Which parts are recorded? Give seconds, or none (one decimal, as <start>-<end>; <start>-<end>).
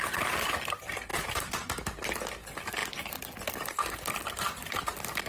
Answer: 0.0-1.1; 2.3-5.3